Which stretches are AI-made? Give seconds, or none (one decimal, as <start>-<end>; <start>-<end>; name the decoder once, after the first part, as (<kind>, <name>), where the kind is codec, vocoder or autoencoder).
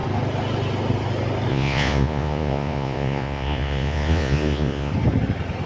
1.5-4.9 (vocoder, Vocos)